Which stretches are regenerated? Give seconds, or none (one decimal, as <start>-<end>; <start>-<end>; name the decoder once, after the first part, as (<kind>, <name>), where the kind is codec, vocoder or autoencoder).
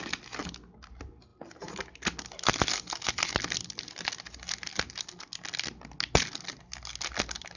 none